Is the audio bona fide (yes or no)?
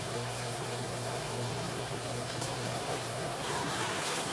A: no